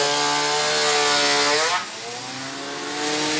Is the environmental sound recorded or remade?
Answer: recorded